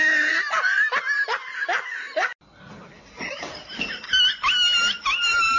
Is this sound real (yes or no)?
yes